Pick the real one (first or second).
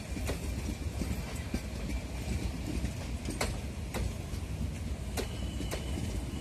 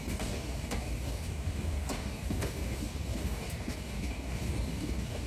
first